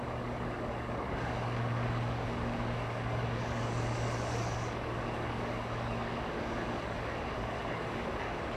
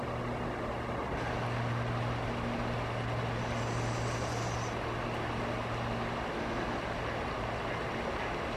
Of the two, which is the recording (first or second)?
second